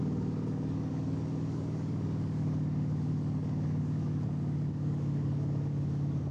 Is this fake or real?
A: fake